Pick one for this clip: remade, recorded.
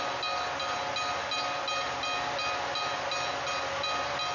recorded